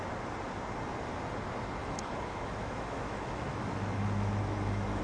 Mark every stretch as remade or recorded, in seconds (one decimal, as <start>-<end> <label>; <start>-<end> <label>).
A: 0.0-1.8 recorded; 1.8-5.0 remade